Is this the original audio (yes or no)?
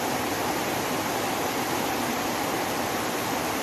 yes